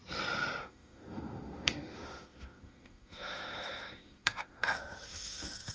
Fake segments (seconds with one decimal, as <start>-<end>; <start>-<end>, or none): 0.6-5.7